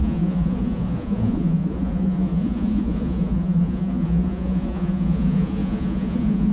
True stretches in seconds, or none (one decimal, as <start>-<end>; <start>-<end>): none